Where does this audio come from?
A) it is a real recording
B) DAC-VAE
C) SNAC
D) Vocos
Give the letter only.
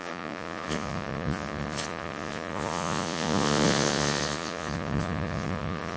D